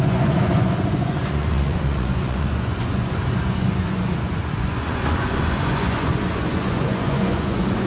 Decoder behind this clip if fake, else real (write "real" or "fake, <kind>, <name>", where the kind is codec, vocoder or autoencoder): fake, vocoder, Vocos